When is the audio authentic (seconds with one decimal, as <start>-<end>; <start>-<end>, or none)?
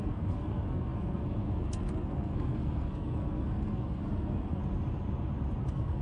4.6-5.6